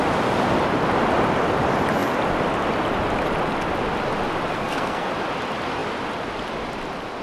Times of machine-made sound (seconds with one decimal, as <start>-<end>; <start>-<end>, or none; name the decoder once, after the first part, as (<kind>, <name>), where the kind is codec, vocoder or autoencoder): 4.5-5.1 (codec, SNAC)